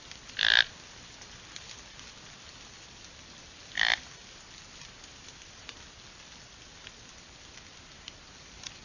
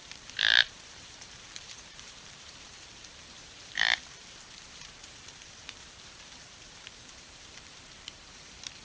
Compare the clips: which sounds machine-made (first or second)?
second